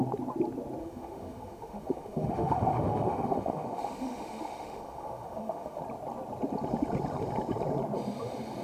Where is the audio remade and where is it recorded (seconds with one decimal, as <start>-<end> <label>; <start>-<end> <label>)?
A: 0.0-0.8 recorded; 0.8-5.8 remade; 5.8-8.6 recorded

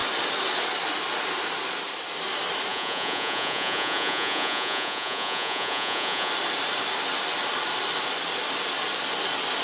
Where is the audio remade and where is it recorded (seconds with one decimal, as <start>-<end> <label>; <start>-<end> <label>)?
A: 0.0-2.7 recorded; 2.7-6.3 remade; 6.3-9.6 recorded

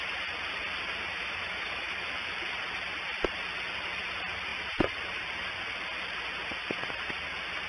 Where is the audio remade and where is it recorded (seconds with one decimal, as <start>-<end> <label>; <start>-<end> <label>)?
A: 0.0-1.1 recorded; 1.1-2.3 remade; 2.3-7.7 recorded

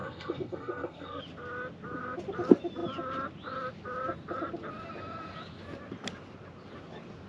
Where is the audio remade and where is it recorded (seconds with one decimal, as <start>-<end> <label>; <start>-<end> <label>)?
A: 0.0-1.2 remade; 1.2-7.3 recorded

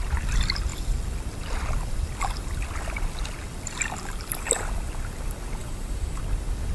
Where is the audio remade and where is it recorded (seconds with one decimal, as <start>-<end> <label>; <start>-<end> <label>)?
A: 0.0-5.6 recorded; 5.6-6.2 remade; 6.2-6.7 recorded

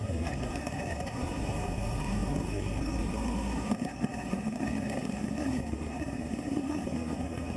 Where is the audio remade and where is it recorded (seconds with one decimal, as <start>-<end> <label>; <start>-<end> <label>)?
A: 0.0-7.6 remade